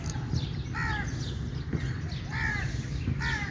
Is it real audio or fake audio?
real